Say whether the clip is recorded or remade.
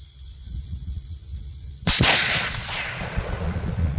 remade